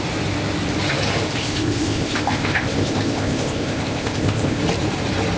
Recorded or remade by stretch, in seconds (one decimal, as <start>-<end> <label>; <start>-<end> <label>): 0.0-1.4 recorded; 1.4-4.6 remade; 4.6-5.4 recorded